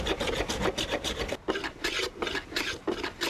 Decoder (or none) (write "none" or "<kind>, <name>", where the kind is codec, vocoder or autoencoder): none